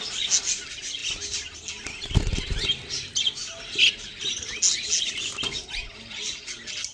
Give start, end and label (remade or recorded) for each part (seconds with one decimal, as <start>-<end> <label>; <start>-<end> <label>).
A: 0.0-6.9 recorded